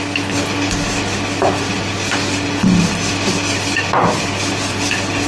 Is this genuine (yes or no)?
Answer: yes